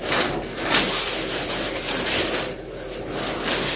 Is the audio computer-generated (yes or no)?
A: no